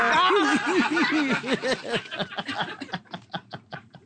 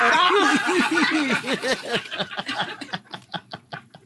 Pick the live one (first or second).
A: first